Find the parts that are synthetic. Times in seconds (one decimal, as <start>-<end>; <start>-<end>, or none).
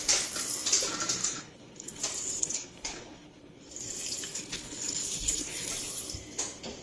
1.2-2.0; 2.4-3.7; 4.3-5.7